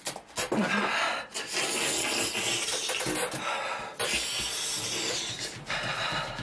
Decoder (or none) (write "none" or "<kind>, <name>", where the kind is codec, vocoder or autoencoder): none